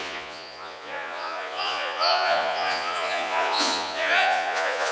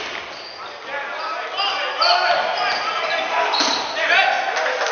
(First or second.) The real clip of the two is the second